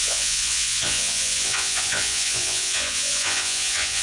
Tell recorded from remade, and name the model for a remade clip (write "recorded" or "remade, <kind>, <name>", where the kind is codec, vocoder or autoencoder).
remade, vocoder, Vocos